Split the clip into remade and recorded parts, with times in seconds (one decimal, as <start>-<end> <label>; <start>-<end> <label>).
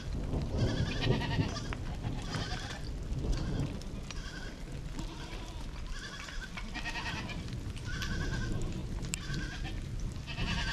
0.0-10.7 recorded